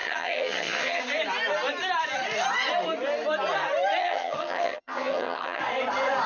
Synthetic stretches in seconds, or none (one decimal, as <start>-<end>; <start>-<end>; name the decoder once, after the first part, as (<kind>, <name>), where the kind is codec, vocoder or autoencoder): 0.0-1.0 (vocoder, HiFi-GAN); 4.0-5.6